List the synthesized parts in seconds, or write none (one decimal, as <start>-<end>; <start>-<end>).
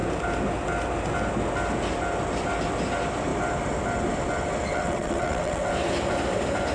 4.7-5.7